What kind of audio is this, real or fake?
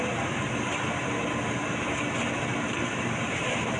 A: real